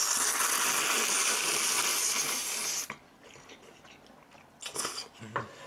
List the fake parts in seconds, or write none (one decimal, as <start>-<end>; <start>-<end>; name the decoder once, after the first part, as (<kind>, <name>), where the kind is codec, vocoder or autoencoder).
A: none